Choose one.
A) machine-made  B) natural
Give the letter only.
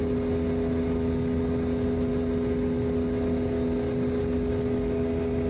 B